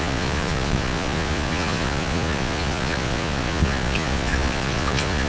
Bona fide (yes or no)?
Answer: no